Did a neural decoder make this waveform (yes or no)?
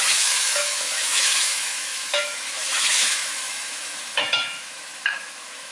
yes